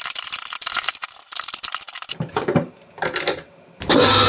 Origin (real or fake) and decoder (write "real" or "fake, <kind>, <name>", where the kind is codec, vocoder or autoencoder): real